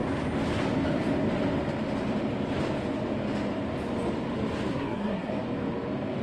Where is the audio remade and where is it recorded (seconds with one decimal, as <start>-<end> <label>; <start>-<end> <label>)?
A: 0.0-4.7 recorded; 4.7-5.3 remade; 5.3-6.2 recorded